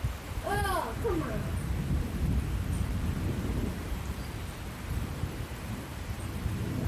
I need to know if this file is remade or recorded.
remade